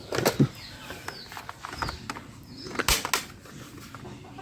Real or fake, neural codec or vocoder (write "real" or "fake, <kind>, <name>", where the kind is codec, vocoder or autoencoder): real